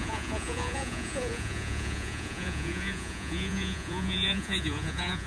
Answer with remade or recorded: remade